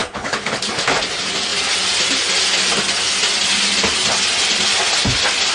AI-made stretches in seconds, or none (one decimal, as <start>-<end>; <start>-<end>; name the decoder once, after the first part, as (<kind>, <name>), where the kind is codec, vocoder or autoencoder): 0.0-0.6 (codec, HILCodec)